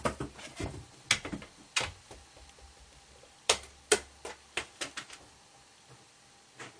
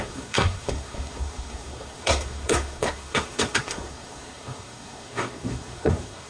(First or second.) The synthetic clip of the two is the second